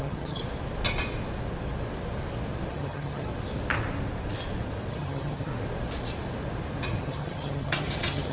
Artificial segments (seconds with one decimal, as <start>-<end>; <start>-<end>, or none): 0.0-0.4; 2.7-3.3; 4.9-5.5; 7.0-8.3